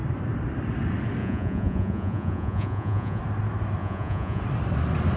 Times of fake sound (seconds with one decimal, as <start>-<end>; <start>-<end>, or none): 1.2-3.2; 3.8-4.4